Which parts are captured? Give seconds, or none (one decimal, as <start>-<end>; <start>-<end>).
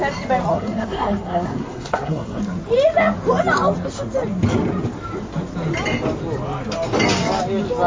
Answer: 0.0-0.5; 2.4-7.9